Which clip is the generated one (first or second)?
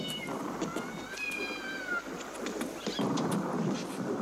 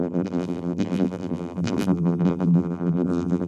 second